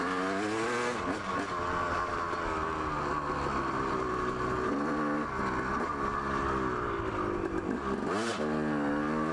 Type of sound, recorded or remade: recorded